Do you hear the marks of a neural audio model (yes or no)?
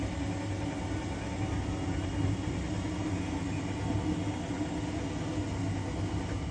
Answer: no